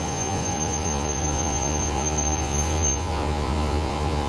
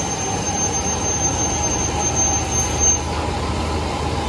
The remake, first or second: first